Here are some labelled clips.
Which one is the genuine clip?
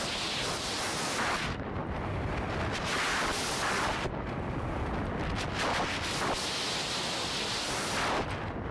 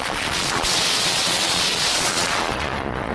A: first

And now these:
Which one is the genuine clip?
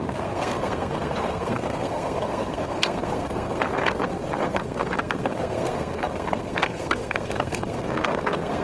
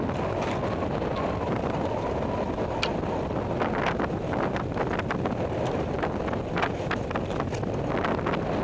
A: second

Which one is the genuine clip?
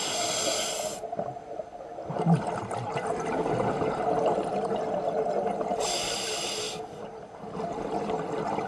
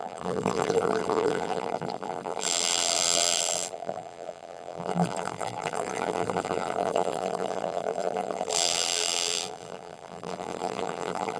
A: first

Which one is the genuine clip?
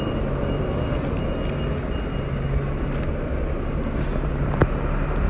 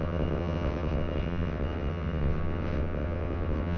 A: first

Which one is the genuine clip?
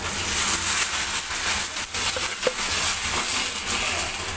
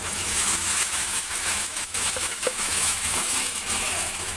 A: first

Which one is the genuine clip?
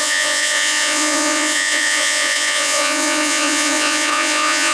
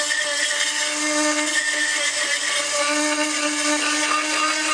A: second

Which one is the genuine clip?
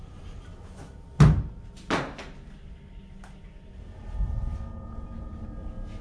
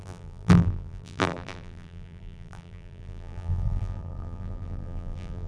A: first